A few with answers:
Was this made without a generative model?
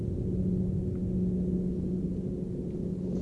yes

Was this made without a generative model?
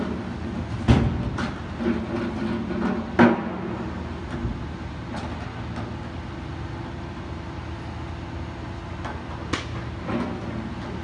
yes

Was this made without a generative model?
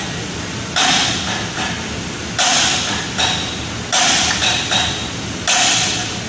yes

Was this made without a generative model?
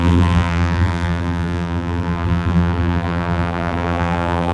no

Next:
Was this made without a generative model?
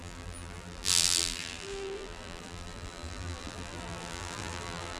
no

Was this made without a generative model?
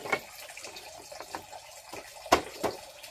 yes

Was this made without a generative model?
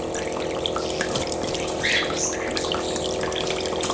no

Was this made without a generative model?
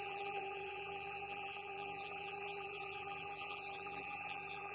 no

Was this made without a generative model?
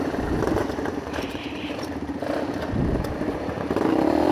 no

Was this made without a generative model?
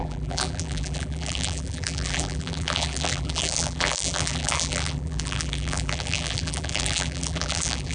no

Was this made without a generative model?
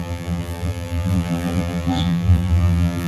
no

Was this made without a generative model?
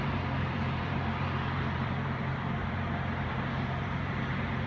no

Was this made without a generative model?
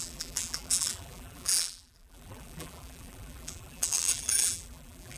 no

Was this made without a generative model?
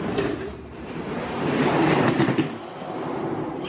no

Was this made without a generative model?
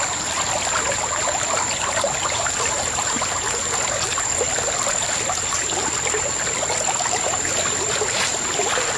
yes